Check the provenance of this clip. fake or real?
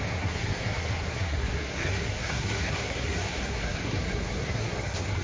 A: fake